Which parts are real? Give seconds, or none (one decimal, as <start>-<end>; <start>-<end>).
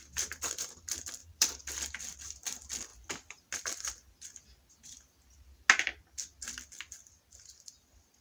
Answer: 0.0-1.2; 1.9-8.2